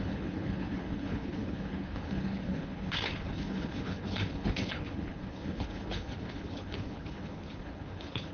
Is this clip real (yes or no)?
no